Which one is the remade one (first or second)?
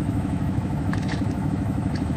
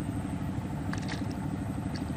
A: first